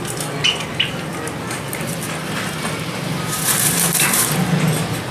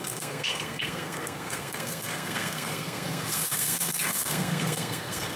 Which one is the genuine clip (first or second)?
first